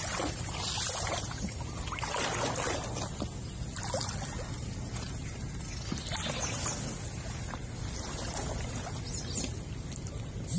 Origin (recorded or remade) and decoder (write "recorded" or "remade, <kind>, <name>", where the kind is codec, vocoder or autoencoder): recorded